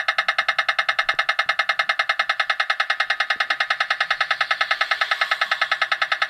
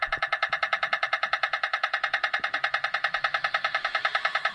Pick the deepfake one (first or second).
second